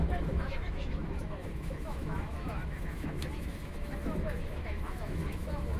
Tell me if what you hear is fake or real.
fake